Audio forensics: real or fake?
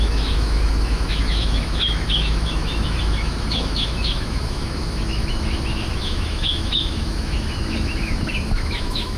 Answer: fake